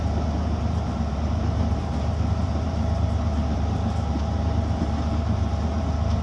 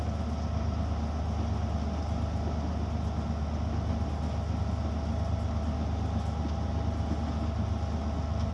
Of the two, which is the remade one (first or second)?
first